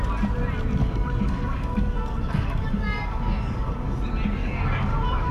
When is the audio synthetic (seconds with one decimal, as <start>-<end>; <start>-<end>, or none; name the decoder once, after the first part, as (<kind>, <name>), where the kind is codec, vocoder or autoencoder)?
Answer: 0.8-4.0 (codec, DAC); 4.4-5.3

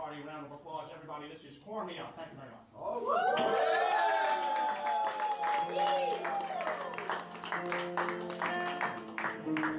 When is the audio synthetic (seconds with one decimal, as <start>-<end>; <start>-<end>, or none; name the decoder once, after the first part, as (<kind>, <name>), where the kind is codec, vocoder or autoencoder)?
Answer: 1.7-3.2 (codec, DAC)

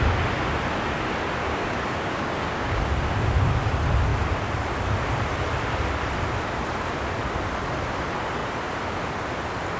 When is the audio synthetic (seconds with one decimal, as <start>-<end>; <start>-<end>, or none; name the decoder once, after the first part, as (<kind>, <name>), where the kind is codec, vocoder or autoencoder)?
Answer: 1.4-2.8 (codec, DAC)

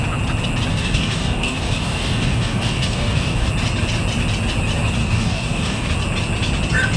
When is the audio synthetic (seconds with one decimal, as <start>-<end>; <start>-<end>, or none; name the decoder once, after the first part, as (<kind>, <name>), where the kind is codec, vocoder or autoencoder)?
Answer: 0.7-3.5 (codec, DAC); 5.0-5.9